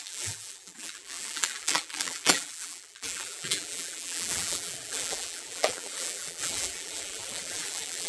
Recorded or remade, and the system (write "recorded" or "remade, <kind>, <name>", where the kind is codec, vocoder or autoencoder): remade, vocoder, BigVGAN v2